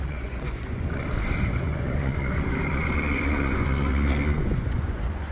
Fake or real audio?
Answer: fake